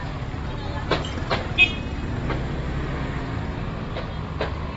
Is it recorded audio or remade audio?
recorded